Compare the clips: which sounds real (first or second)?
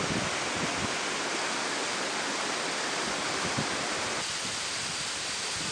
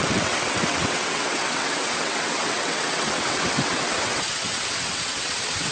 first